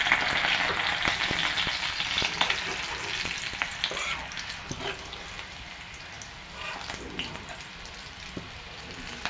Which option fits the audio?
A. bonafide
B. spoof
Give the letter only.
A